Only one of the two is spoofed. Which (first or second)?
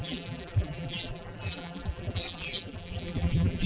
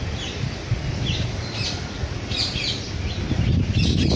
first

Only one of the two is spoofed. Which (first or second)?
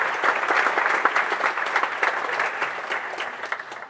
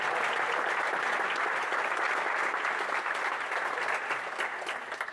first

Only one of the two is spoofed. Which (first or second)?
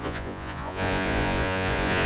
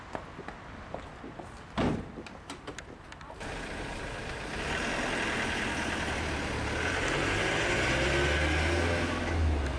first